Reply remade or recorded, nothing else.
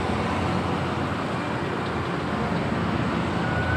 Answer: recorded